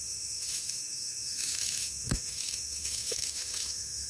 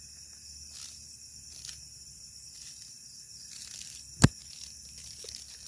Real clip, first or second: second